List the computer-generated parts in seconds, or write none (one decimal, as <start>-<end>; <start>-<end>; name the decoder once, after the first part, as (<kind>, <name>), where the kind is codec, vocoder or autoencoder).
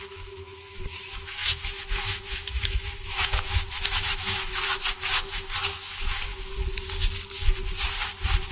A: 0.0-6.3 (autoencoder, DAC-VAE)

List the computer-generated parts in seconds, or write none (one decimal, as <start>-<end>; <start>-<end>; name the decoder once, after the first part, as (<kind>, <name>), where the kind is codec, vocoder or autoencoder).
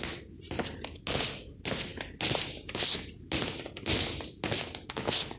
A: none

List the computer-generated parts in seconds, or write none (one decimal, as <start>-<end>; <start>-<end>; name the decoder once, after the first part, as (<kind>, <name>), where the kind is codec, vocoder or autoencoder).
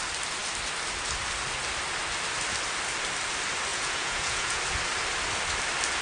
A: 3.7-4.6 (vocoder, Vocos)